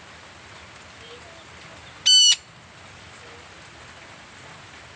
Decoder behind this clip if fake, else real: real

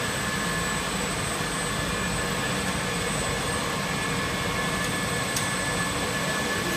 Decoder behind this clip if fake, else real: real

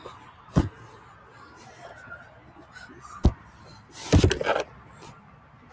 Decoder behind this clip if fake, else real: real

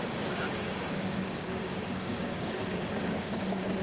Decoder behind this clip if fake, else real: fake, codec, DAC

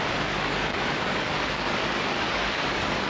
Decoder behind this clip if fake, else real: fake, codec, DAC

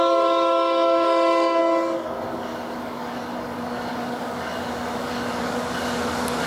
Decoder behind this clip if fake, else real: fake, codec, DAC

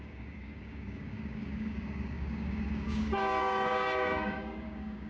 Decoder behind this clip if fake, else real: fake, codec, DAC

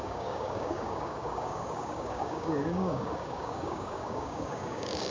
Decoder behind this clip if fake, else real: fake, codec, DAC